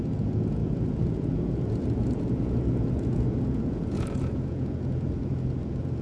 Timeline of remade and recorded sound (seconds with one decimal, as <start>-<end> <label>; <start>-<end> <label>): 0.0-6.0 remade